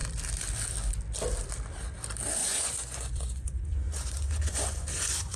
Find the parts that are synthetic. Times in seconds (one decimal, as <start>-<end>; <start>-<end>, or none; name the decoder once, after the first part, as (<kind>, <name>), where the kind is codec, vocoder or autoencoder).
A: 2.4-5.4 (vocoder, Vocos)